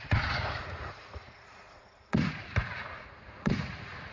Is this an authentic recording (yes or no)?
no